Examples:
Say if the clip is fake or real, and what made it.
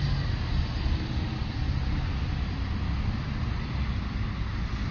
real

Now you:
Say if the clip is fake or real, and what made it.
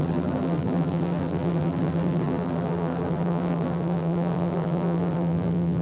fake, vocoder, BigVGAN v2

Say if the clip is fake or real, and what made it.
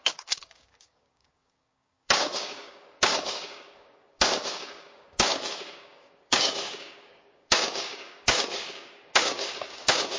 fake, codec, DAC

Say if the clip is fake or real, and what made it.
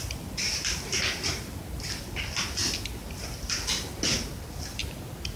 real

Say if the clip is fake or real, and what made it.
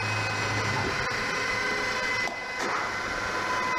real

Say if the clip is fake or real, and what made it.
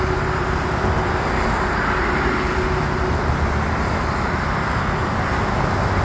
real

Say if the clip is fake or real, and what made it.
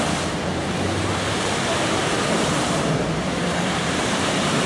fake, vocoder, BigVGAN v2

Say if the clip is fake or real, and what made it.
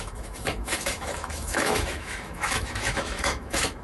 fake, autoencoder, DAC-VAE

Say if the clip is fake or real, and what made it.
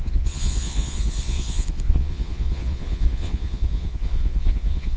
fake, vocoder, Vocos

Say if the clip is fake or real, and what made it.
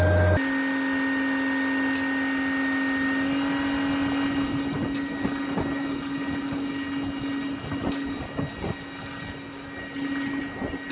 real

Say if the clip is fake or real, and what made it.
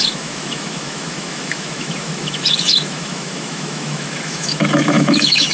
fake, autoencoder, DAC-VAE